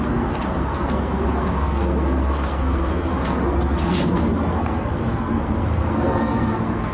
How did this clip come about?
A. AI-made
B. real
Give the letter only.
A